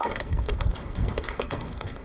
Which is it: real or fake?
fake